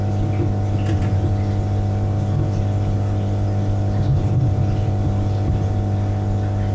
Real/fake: real